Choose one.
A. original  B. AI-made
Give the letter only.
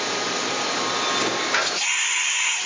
A